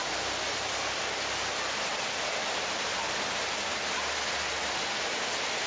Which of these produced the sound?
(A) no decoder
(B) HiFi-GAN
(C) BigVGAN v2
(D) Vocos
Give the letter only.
A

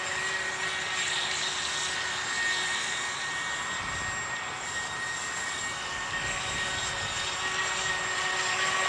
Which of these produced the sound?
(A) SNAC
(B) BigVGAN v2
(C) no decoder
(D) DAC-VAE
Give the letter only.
C